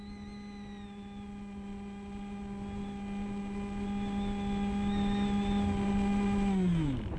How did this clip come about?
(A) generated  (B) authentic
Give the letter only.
B